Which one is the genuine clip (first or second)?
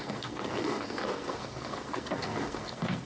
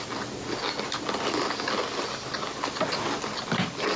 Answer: second